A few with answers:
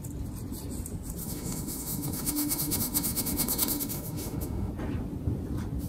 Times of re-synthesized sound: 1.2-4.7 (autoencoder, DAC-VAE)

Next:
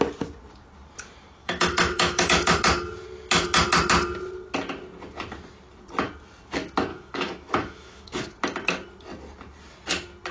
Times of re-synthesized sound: 1.4-2.6 (autoencoder, DAC-VAE); 6.9-8.3